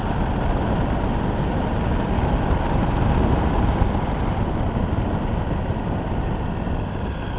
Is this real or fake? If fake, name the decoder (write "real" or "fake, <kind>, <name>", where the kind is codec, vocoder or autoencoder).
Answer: real